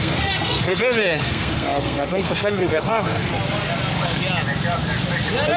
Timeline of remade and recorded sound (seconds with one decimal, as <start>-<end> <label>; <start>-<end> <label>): 0.0-3.3 remade; 3.3-5.6 recorded